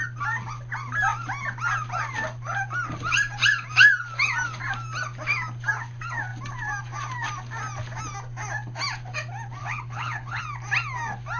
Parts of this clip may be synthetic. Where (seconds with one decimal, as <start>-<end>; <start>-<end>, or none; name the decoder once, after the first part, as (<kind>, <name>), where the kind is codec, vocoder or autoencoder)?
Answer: 9.6-10.4 (codec, HILCodec)